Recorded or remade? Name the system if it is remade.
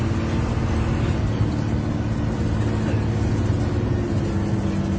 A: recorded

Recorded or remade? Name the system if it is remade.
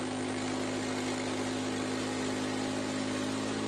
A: recorded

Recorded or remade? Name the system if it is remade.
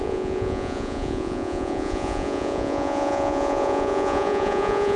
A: remade, vocoder, Vocos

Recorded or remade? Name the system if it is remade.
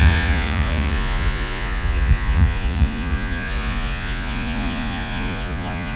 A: remade, vocoder, Vocos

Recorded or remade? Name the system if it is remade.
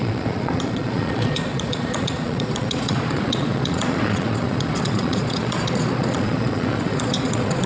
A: remade, vocoder, Vocos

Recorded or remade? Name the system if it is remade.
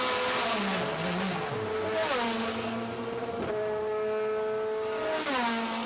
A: recorded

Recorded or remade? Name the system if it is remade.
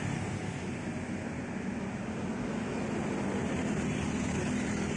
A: recorded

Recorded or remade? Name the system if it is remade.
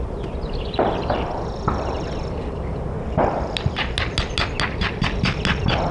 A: recorded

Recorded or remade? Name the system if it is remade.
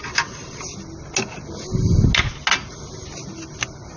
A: recorded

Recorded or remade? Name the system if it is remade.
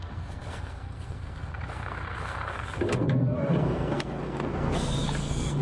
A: remade, codec, SNAC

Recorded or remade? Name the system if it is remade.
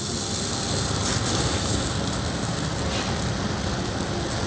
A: recorded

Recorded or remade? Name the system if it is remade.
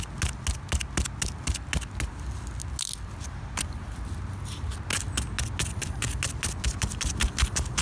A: recorded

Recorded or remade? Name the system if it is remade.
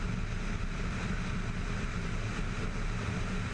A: recorded